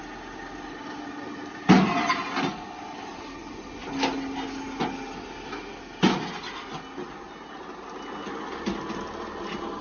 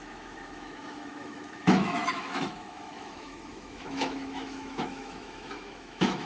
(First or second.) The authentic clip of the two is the first